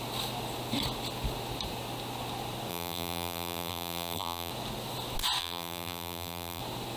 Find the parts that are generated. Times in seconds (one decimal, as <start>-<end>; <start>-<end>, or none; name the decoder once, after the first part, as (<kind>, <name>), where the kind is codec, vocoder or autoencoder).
2.7-4.5 (vocoder, BigVGAN v2); 5.4-6.6